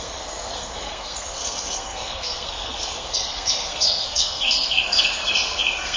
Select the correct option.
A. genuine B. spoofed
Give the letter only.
B